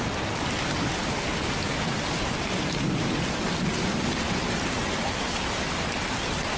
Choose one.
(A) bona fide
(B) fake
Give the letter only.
A